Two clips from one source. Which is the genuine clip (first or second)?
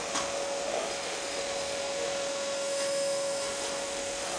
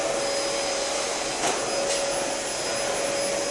second